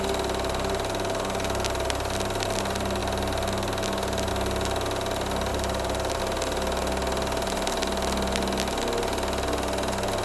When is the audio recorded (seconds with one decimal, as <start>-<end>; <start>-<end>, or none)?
0.0-5.5; 6.2-10.2